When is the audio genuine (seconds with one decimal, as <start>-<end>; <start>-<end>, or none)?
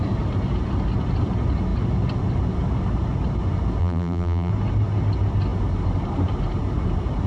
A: 0.0-3.8; 4.5-7.3